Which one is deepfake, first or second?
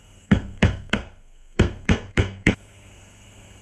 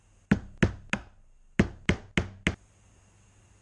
first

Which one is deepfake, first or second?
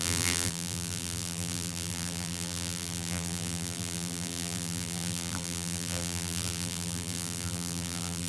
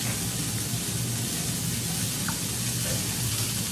first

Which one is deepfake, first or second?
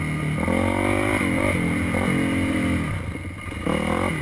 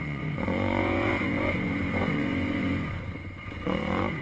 second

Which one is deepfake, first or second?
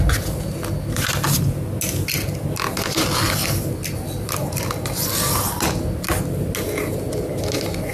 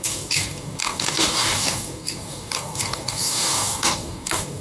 second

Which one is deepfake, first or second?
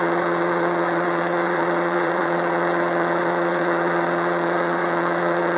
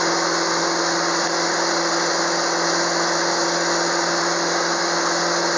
first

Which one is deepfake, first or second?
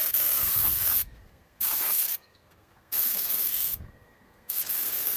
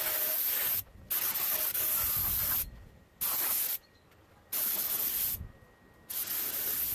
first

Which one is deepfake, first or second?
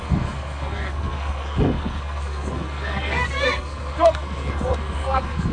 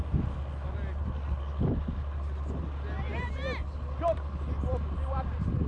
first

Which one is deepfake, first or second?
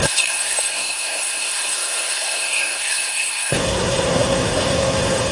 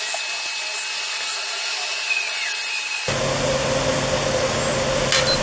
first